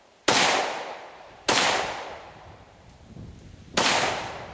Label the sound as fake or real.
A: fake